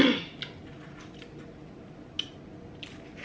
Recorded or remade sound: recorded